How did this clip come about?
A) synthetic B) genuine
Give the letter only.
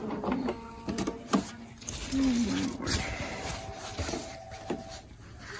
B